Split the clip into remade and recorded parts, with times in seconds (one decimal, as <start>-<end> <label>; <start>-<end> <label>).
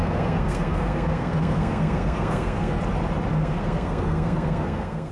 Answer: 0.0-2.8 remade; 2.8-3.3 recorded; 3.3-5.1 remade